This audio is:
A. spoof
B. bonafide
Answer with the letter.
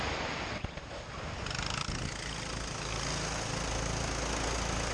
B